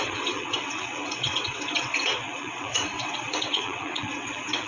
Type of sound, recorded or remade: remade